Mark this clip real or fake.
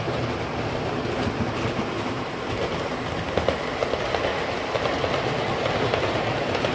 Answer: real